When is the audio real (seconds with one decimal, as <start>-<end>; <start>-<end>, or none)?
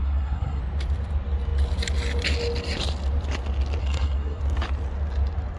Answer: 0.6-3.8; 4.4-5.6